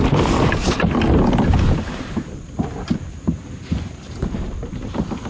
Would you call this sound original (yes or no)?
yes